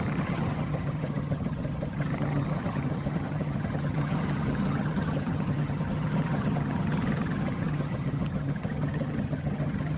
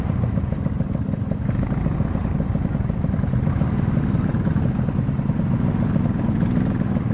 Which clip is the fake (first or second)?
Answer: first